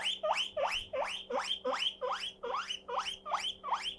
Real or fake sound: real